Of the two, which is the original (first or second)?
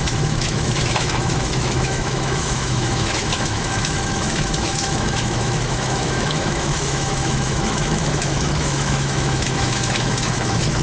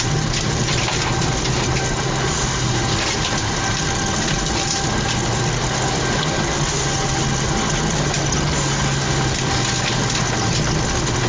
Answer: second